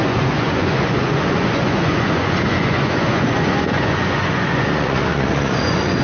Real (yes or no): no